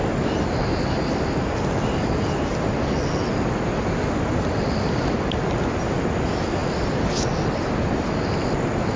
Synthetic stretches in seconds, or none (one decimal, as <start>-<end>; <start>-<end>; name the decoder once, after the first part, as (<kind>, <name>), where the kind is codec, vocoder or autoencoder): none